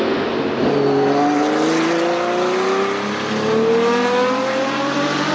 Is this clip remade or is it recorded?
recorded